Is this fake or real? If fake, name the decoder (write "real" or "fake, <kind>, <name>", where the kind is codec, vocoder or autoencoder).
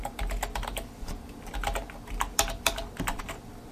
fake, vocoder, BigVGAN v2